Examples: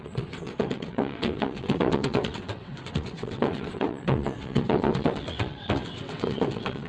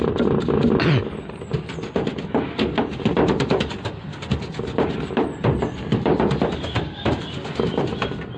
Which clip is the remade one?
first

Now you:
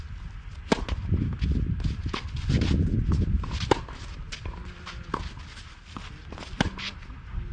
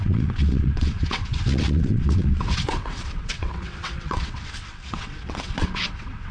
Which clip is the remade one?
second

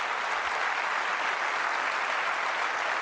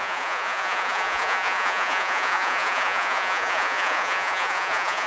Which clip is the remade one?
second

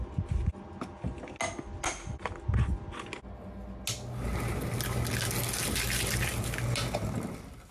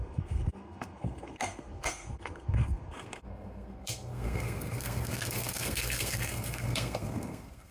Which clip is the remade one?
second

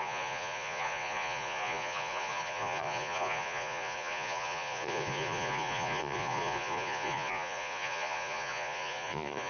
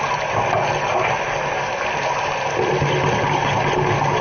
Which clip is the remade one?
first